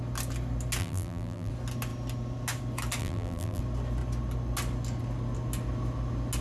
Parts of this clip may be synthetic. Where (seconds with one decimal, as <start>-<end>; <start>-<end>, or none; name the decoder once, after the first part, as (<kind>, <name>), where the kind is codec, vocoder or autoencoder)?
0.8-1.5 (vocoder, BigVGAN v2); 3.0-3.6